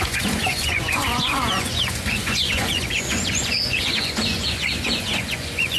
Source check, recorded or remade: remade